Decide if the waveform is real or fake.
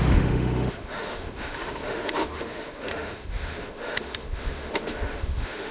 fake